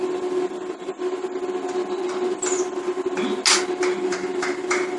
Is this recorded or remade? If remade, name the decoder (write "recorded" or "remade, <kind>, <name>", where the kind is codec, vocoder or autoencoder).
recorded